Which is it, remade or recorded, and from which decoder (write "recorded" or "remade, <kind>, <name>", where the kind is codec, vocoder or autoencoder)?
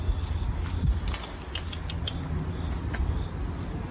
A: recorded